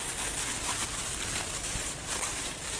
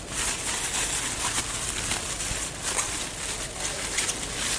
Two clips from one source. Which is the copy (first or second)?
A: first